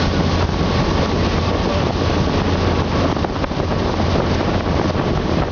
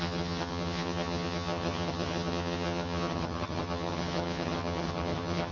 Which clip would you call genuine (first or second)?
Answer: first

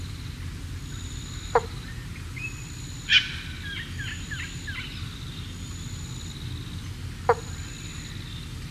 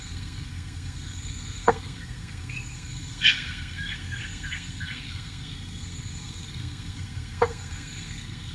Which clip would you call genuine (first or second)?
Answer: first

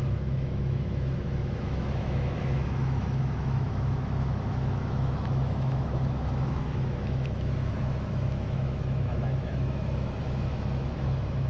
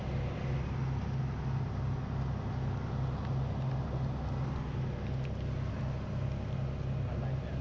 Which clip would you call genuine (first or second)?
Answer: second